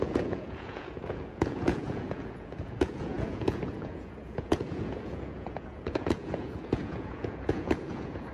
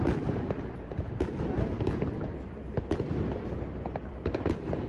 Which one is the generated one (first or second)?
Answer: first